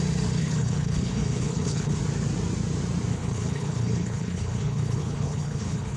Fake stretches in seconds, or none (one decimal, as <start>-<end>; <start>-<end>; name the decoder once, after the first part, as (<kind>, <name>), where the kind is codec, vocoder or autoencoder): 0.4-2.0 (codec, HILCodec); 3.1-6.0